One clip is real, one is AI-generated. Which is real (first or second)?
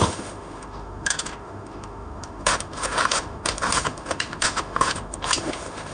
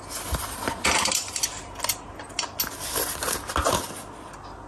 second